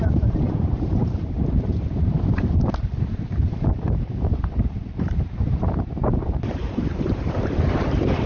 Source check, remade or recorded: remade